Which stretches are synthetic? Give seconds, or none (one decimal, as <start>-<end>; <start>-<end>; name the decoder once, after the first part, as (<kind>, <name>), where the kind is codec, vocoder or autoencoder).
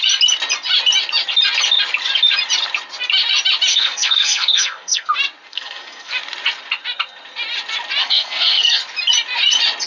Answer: 3.7-5.1 (codec, SNAC); 5.5-6.1; 8.0-8.8